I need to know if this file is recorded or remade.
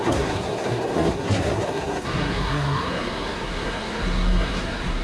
remade